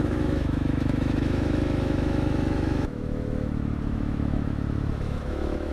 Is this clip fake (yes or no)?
yes